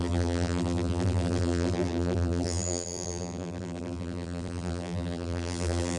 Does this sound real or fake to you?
fake